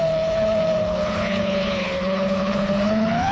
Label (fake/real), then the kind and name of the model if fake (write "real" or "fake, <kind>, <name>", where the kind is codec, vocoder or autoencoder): fake, codec, HILCodec